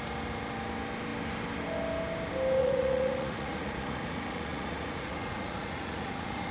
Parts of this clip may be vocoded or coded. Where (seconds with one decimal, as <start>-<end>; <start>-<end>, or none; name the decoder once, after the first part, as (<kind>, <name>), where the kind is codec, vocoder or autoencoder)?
2.6-6.5 (vocoder, Vocos)